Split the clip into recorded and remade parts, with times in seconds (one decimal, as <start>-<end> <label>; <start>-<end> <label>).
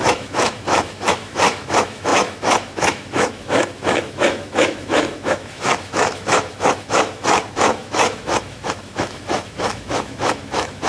0.0-10.9 remade